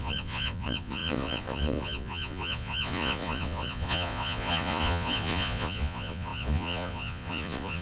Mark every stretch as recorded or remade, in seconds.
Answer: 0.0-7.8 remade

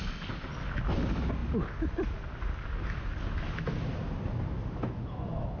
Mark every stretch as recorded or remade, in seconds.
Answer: 0.0-5.6 recorded

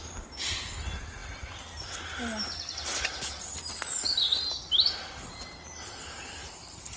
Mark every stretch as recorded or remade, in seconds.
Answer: 0.0-7.0 recorded

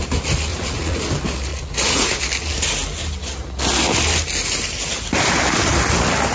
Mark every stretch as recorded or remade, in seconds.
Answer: 0.0-0.5 recorded; 0.5-1.0 remade; 1.0-1.5 recorded; 1.5-2.2 remade; 2.2-6.3 recorded

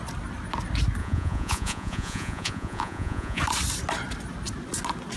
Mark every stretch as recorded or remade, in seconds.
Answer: 0.0-1.0 recorded; 1.0-3.4 remade; 3.4-5.2 recorded

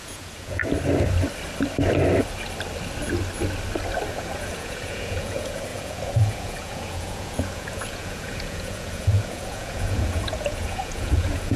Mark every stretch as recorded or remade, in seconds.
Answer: 0.0-0.6 remade; 0.6-4.1 recorded; 4.1-11.6 remade

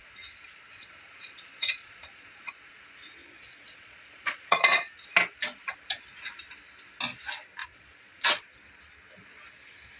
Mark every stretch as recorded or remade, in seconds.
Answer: 0.0-0.7 recorded; 0.7-2.5 remade; 2.5-3.2 recorded; 3.2-4.9 remade; 4.9-7.6 recorded; 7.6-8.4 remade; 8.4-10.0 recorded

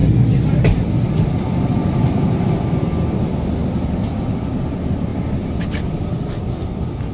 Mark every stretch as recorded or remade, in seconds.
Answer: 0.0-7.1 recorded